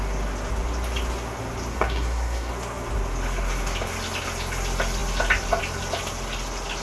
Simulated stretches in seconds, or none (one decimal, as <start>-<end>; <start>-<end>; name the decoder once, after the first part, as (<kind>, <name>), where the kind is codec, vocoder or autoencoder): 1.7-2.5 (codec, SNAC)